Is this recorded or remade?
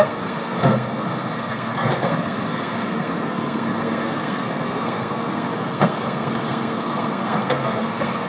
remade